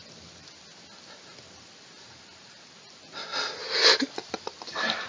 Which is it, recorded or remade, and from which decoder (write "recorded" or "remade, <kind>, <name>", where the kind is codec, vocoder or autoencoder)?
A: recorded